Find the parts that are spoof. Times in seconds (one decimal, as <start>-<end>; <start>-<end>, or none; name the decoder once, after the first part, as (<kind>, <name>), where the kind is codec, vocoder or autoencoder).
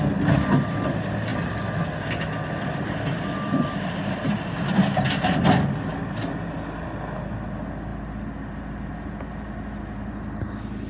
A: 1.3-5.9 (vocoder, BigVGAN v2)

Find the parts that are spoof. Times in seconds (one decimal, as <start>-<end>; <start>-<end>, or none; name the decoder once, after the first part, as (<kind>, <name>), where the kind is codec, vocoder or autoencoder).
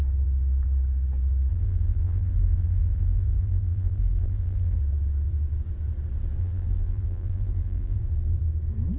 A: 1.5-4.8 (vocoder, BigVGAN v2); 6.4-8.0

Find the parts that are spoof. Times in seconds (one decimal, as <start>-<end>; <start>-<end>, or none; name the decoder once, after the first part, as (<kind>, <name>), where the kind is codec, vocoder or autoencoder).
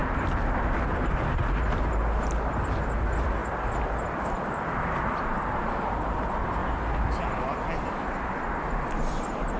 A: 0.0-1.4 (vocoder, BigVGAN v2)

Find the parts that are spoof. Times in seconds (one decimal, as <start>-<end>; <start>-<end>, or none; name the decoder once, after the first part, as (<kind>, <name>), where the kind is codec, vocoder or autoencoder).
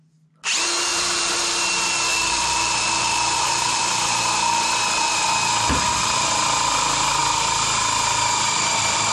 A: 0.9-1.4 (vocoder, BigVGAN v2); 2.1-3.8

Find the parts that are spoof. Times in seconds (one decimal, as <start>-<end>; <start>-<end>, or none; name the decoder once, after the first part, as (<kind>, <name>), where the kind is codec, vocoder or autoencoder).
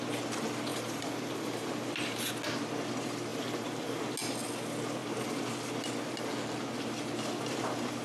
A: 0.7-2.3 (vocoder, BigVGAN v2); 3.3-4.0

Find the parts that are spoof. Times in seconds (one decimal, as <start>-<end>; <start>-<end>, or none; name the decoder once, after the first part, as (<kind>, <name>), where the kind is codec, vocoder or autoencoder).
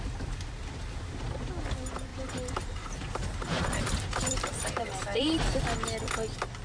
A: 2.1-5.6 (vocoder, BigVGAN v2)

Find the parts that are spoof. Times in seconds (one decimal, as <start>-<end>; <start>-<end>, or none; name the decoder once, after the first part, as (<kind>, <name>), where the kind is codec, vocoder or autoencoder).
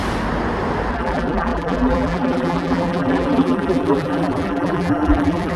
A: 0.9-5.6 (vocoder, BigVGAN v2)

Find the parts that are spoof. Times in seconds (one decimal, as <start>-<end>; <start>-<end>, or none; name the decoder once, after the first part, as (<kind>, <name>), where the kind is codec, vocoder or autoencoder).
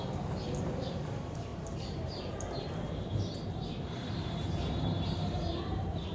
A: 0.0-6.1 (vocoder, BigVGAN v2)